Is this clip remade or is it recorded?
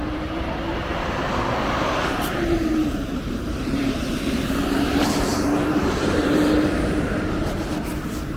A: remade